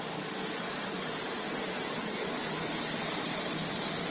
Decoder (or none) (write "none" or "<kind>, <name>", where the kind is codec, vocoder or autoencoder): none